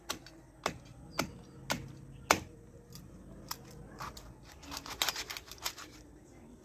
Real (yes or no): yes